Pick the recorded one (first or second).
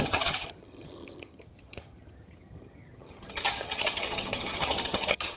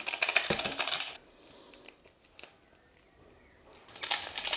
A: second